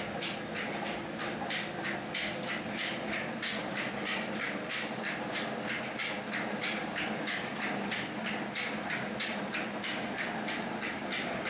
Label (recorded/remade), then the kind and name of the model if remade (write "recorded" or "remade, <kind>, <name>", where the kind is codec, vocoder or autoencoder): recorded